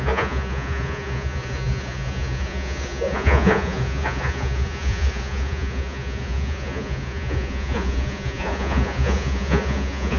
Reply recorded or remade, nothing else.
remade